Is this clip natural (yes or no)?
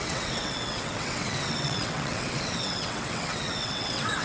no